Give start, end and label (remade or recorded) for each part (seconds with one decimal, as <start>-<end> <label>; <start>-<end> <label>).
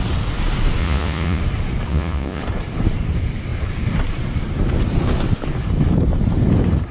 0.0-0.8 recorded; 0.8-1.4 remade; 1.4-1.9 recorded; 1.9-2.4 remade; 2.4-6.9 recorded